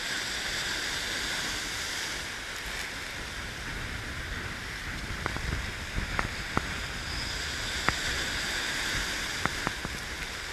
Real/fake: real